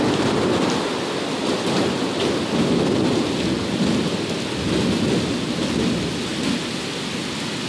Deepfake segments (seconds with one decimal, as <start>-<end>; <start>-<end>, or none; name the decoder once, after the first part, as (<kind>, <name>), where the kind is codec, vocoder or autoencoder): none